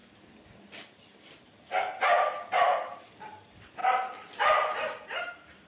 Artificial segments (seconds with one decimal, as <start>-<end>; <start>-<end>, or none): 3.2-3.8; 5.2-5.7